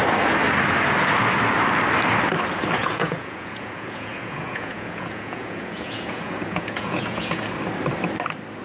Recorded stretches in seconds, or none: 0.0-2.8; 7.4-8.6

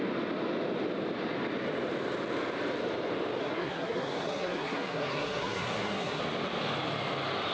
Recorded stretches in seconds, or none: 0.0-3.4; 6.2-7.5

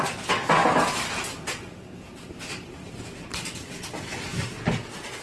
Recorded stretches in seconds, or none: 0.0-0.6; 3.7-5.2